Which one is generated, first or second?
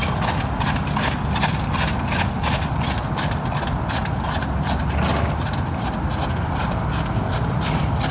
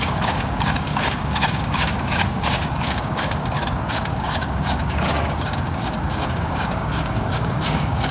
second